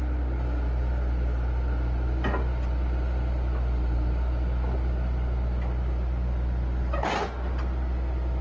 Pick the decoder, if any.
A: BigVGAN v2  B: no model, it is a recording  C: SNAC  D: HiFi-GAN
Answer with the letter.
B